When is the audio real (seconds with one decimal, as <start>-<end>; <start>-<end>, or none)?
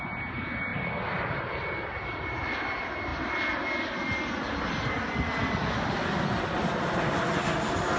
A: 0.0-0.7; 1.5-5.6; 7.3-8.0